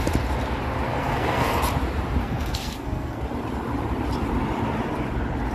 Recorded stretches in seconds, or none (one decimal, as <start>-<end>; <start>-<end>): 0.0-0.9; 1.6-2.2; 3.2-5.5